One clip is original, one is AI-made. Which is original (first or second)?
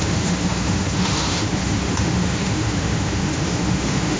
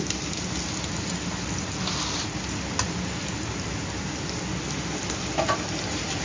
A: second